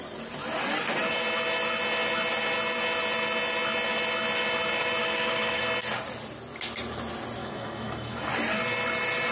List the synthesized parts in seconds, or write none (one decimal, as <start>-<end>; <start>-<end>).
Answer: 5.0-5.6; 7.4-8.3